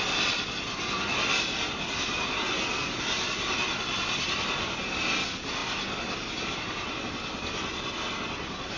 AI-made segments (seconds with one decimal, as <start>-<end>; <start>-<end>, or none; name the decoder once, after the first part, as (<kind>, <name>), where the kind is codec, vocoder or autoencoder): none